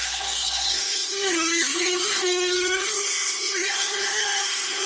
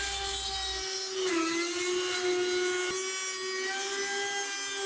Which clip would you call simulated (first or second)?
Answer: first